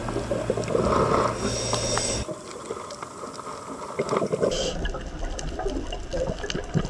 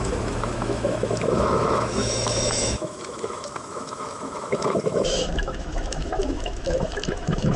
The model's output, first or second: second